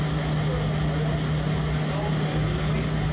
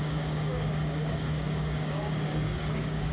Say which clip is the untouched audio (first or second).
first